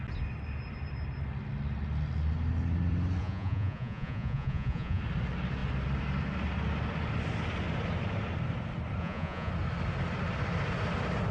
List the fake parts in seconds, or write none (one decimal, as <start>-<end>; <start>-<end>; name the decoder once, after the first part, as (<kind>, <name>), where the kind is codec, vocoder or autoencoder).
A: 3.2-5.0 (vocoder, Vocos); 9.0-9.5